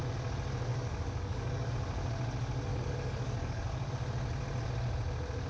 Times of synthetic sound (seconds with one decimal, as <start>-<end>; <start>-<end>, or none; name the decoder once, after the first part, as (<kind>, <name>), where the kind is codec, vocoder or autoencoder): 0.7-1.7 (codec, DAC); 2.7-3.9